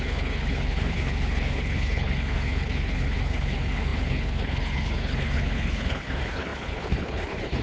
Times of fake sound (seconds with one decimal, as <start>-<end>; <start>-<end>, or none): 0.0-7.6